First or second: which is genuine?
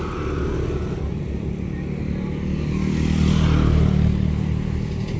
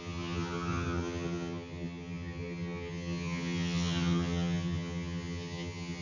first